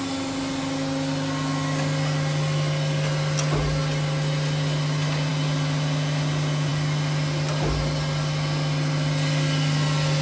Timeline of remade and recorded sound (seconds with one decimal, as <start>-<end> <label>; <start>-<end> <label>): 0.0-10.2 recorded